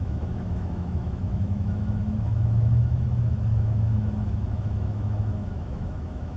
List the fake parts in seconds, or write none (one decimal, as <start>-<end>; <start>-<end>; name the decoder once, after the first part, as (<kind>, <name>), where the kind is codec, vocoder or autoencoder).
0.0-6.4 (autoencoder, DAC-VAE)